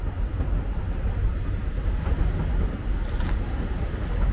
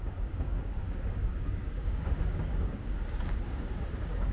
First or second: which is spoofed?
second